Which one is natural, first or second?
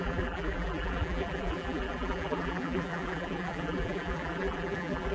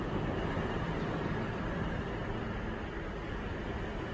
second